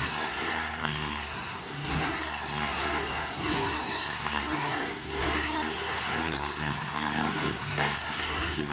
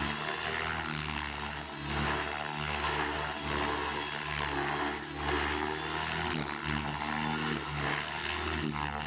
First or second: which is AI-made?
first